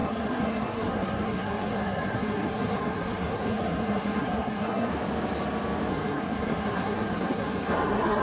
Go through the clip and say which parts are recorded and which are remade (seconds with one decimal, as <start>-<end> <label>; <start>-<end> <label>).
0.0-4.9 remade; 4.9-5.9 recorded; 5.9-8.2 remade